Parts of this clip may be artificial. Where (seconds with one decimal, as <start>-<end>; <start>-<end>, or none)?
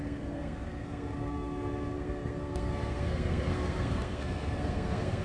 0.0-5.2